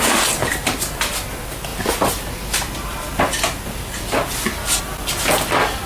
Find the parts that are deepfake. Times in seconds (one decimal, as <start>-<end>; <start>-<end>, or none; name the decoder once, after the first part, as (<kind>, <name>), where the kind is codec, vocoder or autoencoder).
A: none